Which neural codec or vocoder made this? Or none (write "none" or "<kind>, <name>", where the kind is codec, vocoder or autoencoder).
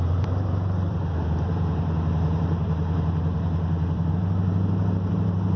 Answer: vocoder, BigVGAN v2